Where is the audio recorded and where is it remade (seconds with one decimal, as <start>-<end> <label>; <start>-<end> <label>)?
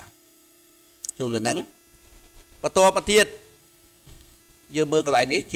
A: 0.0-1.7 remade; 1.7-3.6 recorded; 3.6-4.4 remade; 4.4-5.0 recorded; 5.0-5.6 remade